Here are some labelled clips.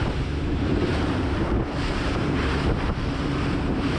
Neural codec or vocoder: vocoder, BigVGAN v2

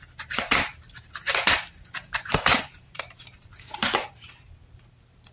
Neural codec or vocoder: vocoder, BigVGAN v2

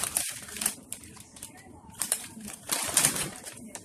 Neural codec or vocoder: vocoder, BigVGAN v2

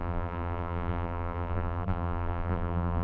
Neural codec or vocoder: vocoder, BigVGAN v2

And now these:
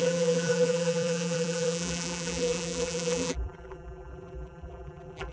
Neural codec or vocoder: vocoder, BigVGAN v2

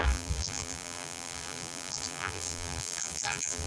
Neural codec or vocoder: vocoder, BigVGAN v2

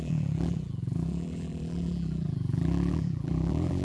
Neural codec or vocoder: vocoder, BigVGAN v2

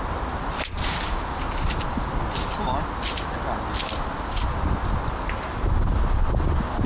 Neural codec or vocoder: none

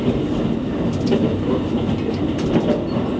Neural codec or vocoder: none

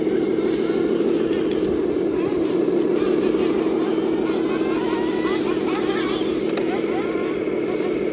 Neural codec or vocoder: none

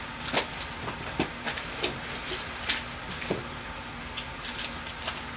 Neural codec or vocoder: none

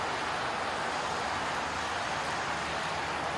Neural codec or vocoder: none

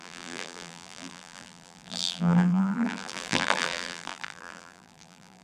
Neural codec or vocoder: vocoder, BigVGAN v2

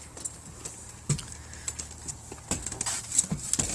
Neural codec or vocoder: none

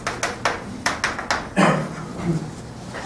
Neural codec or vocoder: none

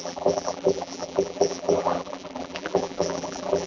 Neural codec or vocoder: vocoder, BigVGAN v2